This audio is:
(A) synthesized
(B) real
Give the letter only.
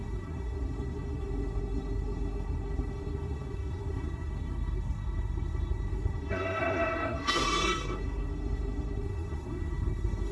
A